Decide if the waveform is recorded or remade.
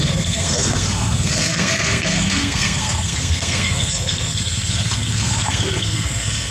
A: remade